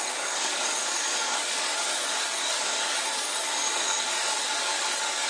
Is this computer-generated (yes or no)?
yes